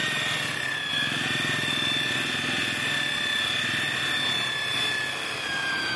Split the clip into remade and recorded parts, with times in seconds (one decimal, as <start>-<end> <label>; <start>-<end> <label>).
0.0-6.0 recorded